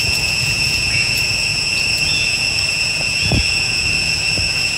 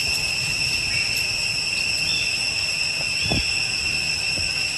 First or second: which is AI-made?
first